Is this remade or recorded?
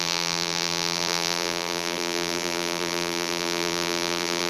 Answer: remade